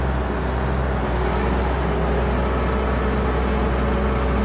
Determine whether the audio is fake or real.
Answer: real